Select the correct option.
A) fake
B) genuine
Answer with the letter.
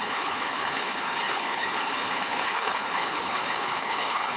A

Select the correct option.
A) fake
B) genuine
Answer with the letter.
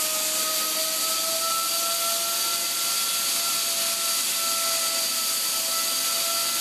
B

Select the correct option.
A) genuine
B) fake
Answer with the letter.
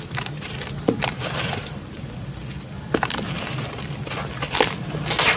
A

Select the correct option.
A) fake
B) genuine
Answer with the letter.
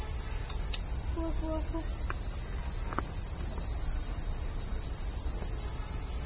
B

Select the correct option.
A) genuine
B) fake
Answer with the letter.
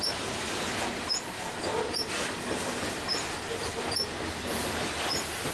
A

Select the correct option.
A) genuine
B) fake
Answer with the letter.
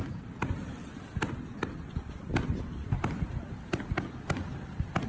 A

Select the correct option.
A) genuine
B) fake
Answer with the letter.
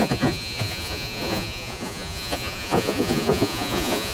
B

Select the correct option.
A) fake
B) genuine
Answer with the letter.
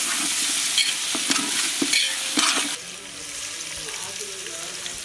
B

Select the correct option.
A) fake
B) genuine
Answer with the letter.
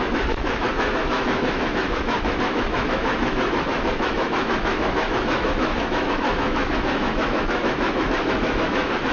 A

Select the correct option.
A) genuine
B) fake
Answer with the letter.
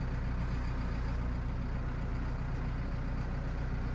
A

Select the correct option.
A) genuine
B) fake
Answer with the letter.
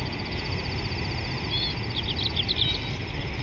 A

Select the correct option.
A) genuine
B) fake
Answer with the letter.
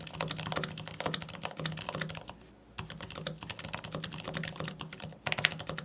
A